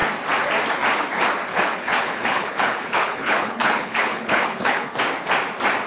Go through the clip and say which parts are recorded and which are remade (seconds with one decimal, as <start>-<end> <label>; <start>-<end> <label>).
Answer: 0.0-1.5 recorded; 1.5-5.0 remade; 5.0-5.9 recorded